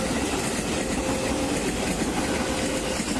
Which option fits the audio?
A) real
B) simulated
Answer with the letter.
A